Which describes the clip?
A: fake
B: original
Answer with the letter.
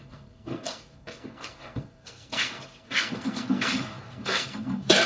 A